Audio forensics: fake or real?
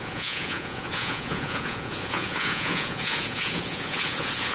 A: fake